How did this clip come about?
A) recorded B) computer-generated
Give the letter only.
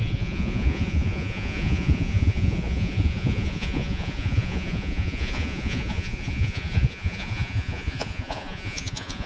B